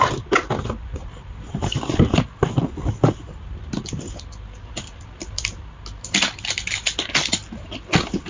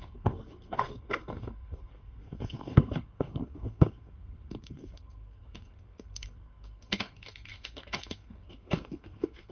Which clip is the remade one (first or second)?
second